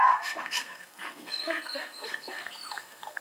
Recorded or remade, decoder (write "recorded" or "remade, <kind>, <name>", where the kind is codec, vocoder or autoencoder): remade, codec, SNAC